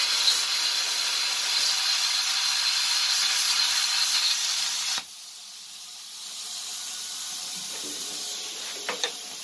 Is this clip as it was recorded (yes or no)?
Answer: yes